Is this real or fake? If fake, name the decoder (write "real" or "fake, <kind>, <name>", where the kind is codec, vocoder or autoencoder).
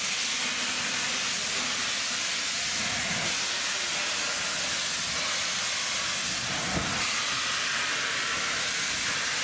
real